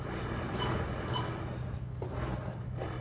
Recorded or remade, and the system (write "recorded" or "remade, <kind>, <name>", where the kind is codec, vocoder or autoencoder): recorded